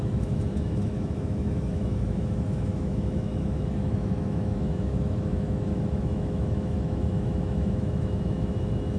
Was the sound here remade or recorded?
remade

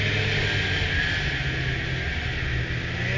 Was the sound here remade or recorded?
recorded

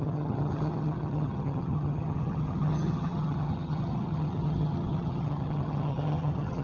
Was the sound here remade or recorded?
remade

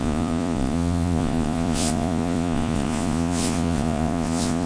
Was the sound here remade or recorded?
remade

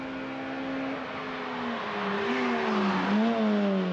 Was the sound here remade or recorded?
recorded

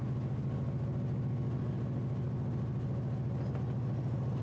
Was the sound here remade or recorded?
recorded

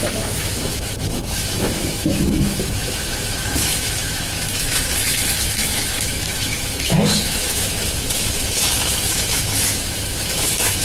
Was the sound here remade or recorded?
remade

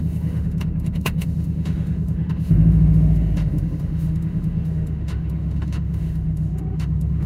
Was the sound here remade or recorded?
remade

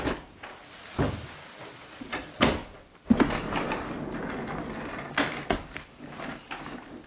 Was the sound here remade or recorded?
recorded